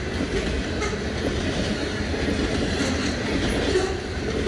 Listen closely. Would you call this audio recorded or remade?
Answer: recorded